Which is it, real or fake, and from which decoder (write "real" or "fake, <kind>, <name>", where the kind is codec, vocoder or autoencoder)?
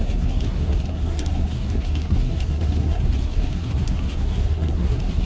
fake, codec, SNAC